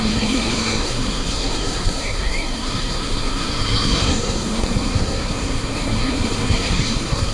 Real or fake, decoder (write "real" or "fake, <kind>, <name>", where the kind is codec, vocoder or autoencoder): fake, codec, SNAC